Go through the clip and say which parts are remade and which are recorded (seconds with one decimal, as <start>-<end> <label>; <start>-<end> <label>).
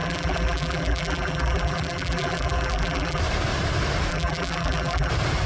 0.0-3.2 remade; 3.2-4.1 recorded; 4.1-5.1 remade; 5.1-5.5 recorded